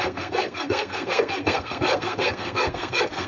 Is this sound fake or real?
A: fake